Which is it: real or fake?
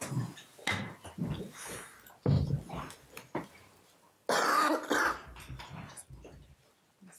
real